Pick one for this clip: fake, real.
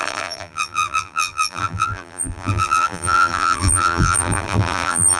fake